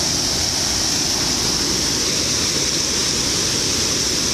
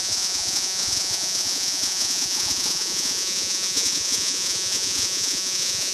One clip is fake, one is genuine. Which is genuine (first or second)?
first